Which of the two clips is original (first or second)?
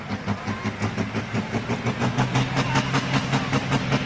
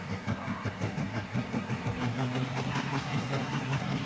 first